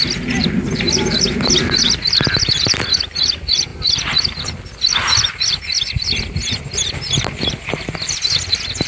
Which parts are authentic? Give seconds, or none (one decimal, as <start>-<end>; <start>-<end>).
0.0-8.9